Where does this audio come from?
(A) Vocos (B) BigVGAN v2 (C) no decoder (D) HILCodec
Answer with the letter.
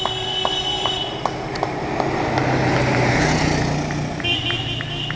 C